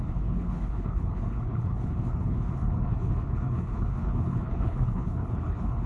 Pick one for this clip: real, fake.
fake